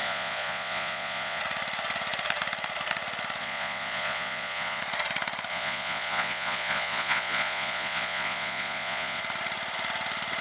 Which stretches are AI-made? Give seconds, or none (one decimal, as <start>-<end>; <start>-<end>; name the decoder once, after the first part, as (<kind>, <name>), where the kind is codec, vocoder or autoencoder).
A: 0.0-1.4 (vocoder, Vocos); 3.4-4.8; 5.5-9.2